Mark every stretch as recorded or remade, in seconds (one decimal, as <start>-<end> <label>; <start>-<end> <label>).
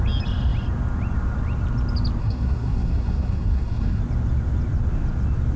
0.0-2.2 recorded; 2.2-4.0 remade; 4.0-5.6 recorded